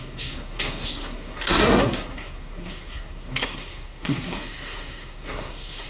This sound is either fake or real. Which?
fake